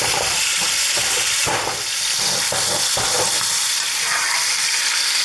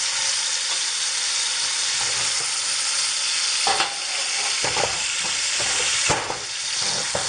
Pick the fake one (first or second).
first